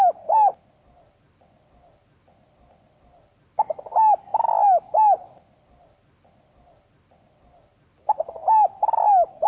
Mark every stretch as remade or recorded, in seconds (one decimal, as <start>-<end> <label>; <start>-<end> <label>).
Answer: 0.0-9.5 recorded